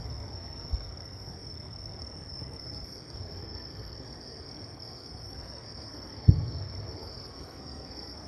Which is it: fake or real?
fake